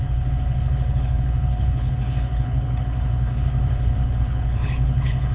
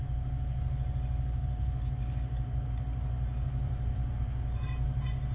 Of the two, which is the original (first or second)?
second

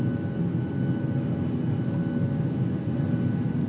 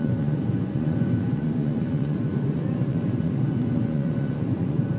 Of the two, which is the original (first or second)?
first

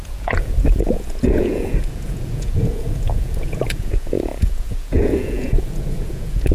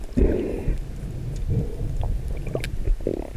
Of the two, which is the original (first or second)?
second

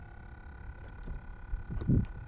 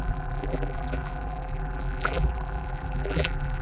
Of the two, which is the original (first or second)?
first